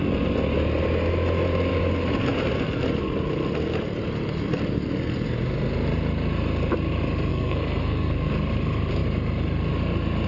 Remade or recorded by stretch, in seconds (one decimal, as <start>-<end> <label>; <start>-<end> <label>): 0.0-7.3 recorded; 7.3-8.3 remade; 8.3-10.3 recorded